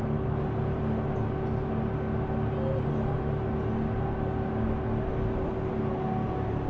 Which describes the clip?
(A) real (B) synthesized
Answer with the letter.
A